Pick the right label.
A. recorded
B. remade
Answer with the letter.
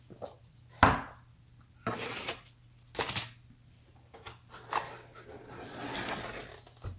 A